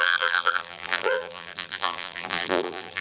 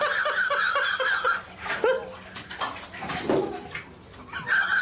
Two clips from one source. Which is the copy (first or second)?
first